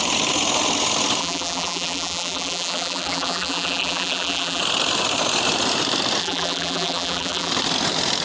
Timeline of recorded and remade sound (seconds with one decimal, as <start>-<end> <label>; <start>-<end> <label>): 0.0-1.2 recorded; 1.2-4.6 remade; 4.6-6.2 recorded; 6.2-7.5 remade; 7.5-8.2 recorded